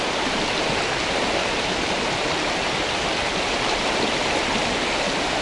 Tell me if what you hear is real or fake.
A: real